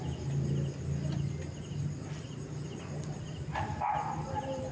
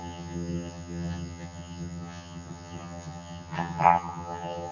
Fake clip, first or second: second